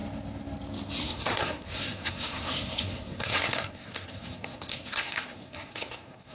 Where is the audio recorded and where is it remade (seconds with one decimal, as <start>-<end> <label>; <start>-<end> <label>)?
0.0-1.0 recorded; 1.0-6.3 remade